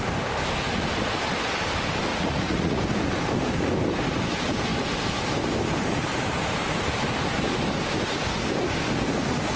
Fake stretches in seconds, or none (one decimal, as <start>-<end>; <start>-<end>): 2.1-2.8